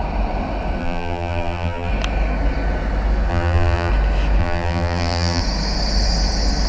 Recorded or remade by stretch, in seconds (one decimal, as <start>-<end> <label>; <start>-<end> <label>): 0.0-0.8 recorded; 0.8-1.9 remade; 1.9-3.3 recorded; 3.3-3.9 remade; 3.9-4.4 recorded; 4.4-5.4 remade; 5.4-6.7 recorded